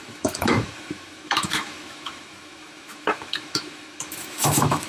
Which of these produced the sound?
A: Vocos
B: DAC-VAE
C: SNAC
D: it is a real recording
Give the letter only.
B